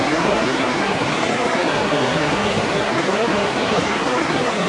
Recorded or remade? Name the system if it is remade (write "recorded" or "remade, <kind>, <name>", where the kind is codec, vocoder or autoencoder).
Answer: remade, codec, SNAC